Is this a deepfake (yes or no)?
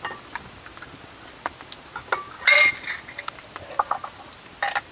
no